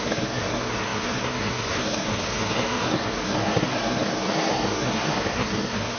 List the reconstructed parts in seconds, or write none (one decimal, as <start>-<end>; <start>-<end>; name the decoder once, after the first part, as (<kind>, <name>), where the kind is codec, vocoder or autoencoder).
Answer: 0.0-6.0 (codec, SNAC)